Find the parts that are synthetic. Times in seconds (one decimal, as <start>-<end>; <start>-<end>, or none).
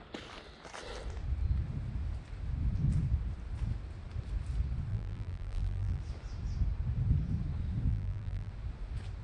4.9-6.0; 7.9-8.5